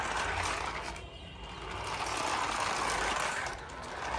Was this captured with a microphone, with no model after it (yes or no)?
yes